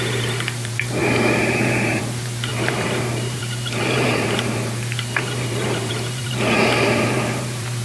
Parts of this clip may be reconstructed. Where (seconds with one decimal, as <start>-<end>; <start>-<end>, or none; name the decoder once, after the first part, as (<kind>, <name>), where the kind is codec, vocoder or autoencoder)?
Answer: 0.0-7.8 (vocoder, BigVGAN v2)